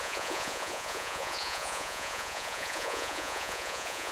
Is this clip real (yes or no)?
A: no